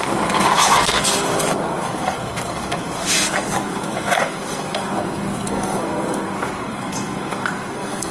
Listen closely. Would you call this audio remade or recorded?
remade